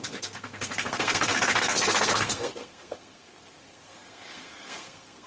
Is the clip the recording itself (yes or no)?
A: no